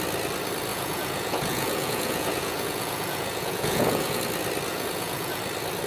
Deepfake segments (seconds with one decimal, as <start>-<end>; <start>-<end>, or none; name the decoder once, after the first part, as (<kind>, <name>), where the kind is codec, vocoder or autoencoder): 0.7-4.2 (vocoder, Vocos); 4.7-5.4